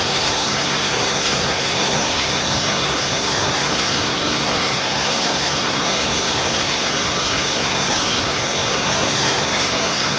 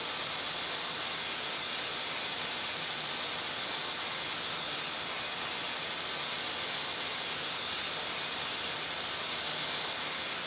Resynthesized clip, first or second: first